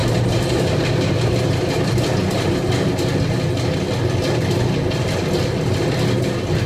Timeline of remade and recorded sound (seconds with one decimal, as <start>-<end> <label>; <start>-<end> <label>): 0.0-2.0 remade; 2.0-6.7 recorded